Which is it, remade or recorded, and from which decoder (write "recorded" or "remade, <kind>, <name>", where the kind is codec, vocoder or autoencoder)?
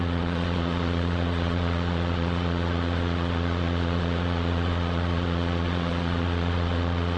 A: remade, vocoder, Vocos